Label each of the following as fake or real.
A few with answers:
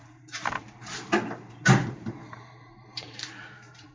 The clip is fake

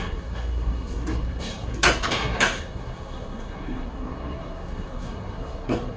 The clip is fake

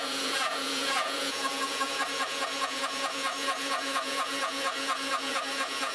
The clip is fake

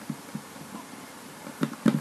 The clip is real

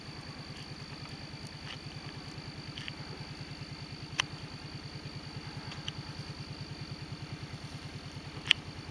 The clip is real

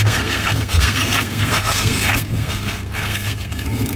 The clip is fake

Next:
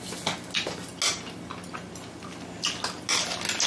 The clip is real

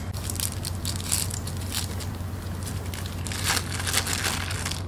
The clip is real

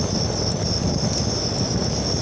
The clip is real